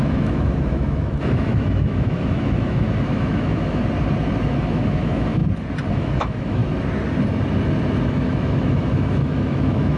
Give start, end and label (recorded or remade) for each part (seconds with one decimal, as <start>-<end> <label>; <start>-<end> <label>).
0.0-3.8 remade; 3.8-4.6 recorded; 4.6-5.4 remade; 5.4-5.9 recorded; 5.9-6.6 remade; 6.6-8.1 recorded; 8.1-10.0 remade